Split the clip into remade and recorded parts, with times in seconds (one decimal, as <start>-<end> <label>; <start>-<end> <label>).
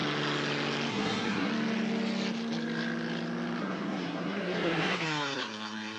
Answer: 0.0-0.9 recorded; 0.9-1.5 remade; 1.5-3.6 recorded; 3.6-6.0 remade